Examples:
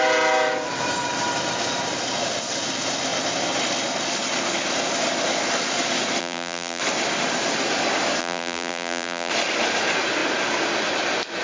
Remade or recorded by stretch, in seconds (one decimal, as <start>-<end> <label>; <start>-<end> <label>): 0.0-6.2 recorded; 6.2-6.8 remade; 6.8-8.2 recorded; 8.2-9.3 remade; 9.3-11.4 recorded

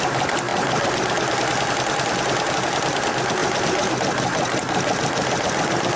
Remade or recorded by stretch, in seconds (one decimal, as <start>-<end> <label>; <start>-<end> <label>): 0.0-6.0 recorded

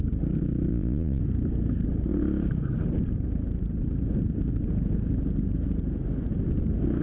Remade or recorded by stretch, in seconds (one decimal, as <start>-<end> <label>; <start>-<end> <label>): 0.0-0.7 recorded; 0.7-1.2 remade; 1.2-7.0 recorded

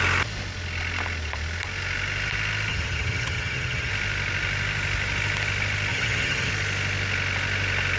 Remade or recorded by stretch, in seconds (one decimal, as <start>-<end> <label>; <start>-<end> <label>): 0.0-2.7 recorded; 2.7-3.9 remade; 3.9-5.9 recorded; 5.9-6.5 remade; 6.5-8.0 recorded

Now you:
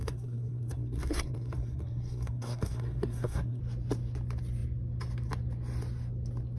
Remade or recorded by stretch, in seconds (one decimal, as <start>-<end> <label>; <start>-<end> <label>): 0.0-3.6 remade; 3.6-6.6 recorded

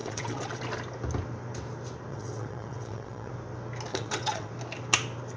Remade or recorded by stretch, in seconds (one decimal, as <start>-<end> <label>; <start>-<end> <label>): 0.0-0.6 remade; 0.6-2.1 recorded; 2.1-3.3 remade; 3.3-3.9 recorded; 3.9-4.5 remade; 4.5-5.4 recorded

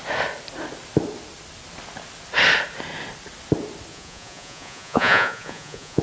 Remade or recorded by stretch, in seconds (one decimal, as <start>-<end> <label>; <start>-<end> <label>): 0.0-3.9 recorded; 3.9-6.0 remade